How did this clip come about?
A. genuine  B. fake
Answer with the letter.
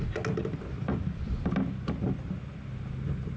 A